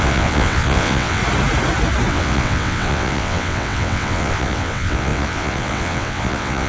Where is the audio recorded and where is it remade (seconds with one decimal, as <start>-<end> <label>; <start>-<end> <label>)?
0.0-1.2 remade; 1.2-2.1 recorded; 2.1-6.7 remade